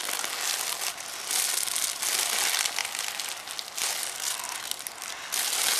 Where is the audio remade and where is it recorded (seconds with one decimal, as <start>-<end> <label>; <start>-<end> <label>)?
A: 0.0-5.8 recorded

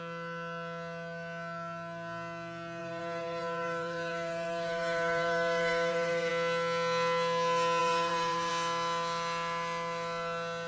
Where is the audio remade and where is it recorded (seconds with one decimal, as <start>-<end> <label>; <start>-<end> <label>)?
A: 0.0-2.8 recorded; 2.8-6.3 remade; 6.3-7.8 recorded; 7.8-8.5 remade; 8.5-10.7 recorded

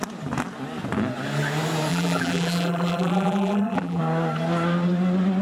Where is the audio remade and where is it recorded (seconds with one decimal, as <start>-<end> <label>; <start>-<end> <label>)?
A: 0.0-1.9 recorded; 1.9-4.0 remade; 4.0-5.4 recorded